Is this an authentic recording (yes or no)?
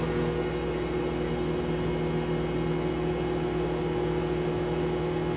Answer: yes